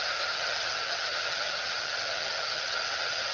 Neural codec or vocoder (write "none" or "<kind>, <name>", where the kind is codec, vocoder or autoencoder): vocoder, HiFi-GAN